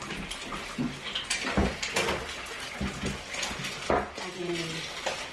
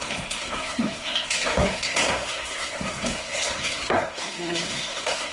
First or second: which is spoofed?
second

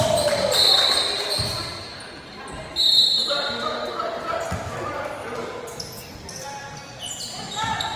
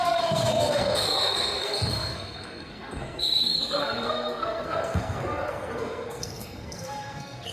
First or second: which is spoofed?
second